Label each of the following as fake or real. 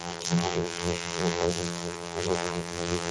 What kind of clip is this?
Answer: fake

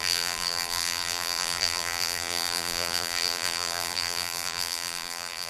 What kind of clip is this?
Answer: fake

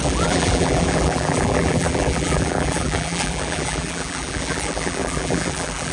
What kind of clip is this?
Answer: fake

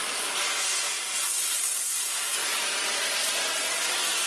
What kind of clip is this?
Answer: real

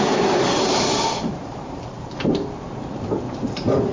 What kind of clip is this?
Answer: fake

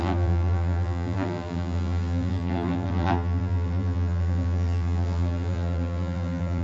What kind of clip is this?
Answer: fake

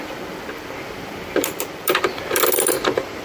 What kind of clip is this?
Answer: fake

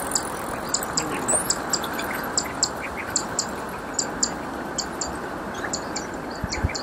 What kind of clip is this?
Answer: real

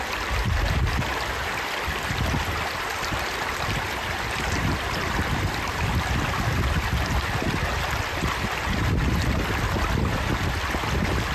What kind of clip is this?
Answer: real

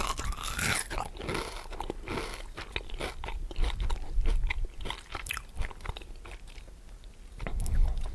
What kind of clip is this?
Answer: real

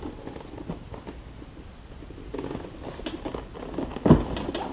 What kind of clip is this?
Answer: real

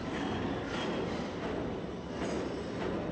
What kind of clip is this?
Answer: real